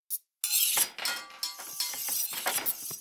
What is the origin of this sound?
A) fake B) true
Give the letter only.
B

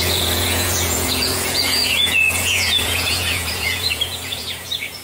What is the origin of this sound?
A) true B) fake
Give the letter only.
B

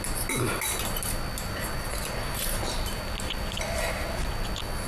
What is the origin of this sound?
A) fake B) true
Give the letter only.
B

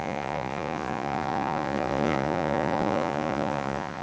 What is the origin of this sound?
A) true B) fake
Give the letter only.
B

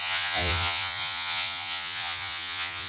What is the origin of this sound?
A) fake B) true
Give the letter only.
A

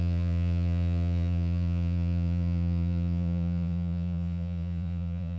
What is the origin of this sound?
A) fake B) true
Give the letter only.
A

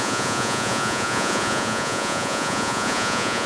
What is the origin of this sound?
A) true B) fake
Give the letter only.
B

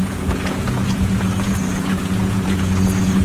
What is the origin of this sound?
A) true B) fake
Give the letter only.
B